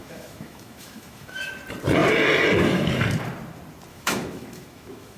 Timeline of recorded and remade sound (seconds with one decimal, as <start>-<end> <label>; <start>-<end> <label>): 0.0-1.5 remade; 1.5-3.9 recorded; 3.9-5.2 remade